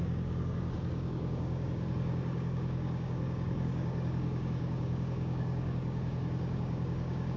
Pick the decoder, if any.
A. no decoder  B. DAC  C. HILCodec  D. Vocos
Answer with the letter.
B